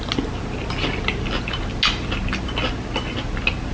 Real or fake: real